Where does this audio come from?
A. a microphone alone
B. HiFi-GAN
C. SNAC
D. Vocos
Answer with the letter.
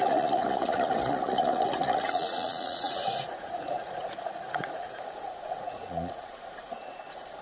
D